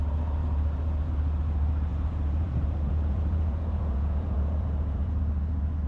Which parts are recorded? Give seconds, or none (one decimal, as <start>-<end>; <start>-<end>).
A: 0.0-1.9; 5.2-5.9